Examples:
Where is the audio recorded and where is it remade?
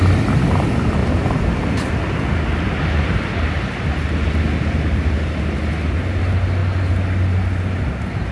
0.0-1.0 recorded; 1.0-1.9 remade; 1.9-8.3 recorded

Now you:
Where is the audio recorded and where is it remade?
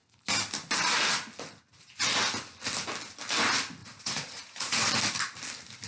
0.0-3.8 recorded; 3.8-4.9 remade; 4.9-5.9 recorded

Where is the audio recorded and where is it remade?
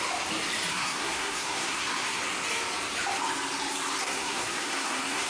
0.0-0.7 recorded; 0.7-2.2 remade; 2.2-4.0 recorded; 4.0-5.3 remade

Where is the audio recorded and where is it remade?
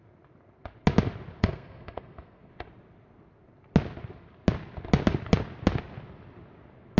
0.0-1.4 recorded; 1.4-2.5 remade; 2.5-7.0 recorded